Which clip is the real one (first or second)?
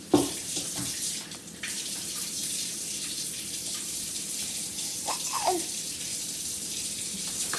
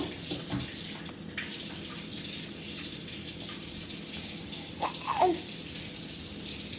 second